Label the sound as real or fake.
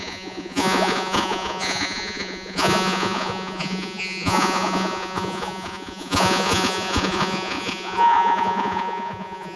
fake